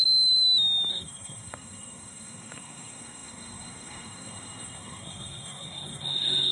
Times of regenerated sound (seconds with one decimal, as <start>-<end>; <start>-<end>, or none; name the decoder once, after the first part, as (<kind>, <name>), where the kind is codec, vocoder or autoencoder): 0.9-6.5 (codec, SNAC)